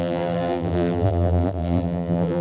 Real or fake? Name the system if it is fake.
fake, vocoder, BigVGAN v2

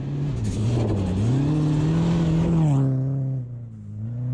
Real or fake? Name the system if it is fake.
real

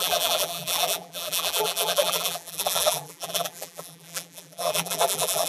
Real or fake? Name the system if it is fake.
fake, vocoder, BigVGAN v2